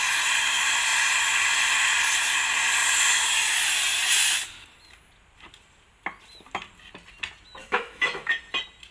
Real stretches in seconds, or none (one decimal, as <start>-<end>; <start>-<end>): 0.0-7.6; 8.3-8.9